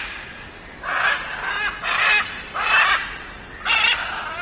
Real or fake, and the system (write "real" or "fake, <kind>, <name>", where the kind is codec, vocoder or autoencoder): real